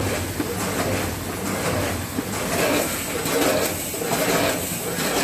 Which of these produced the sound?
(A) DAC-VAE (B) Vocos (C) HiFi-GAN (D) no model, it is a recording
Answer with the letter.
D